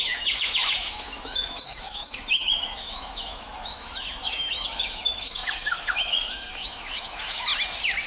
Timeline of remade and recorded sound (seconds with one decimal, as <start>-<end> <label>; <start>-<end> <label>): 0.0-7.5 remade; 7.5-8.1 recorded